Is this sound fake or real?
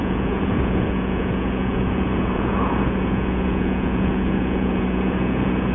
fake